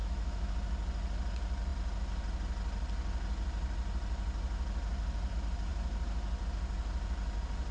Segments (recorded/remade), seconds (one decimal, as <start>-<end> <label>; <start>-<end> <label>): 0.0-0.5 remade; 0.5-7.7 recorded